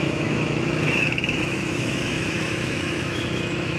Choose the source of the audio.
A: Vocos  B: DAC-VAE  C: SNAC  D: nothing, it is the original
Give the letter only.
B